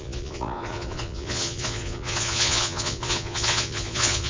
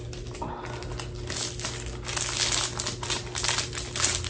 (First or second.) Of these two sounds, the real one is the second